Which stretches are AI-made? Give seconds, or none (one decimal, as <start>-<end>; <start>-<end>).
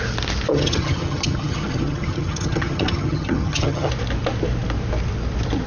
0.5-3.9